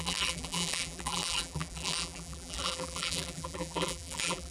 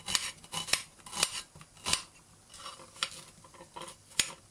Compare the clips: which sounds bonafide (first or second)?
second